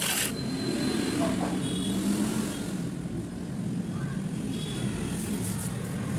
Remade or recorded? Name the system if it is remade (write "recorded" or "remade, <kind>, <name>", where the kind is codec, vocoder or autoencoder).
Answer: recorded